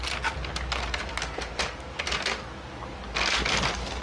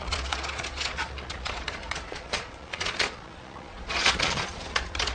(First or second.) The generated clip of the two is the second